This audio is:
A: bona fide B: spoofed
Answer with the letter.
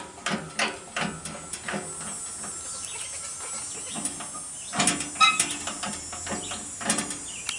A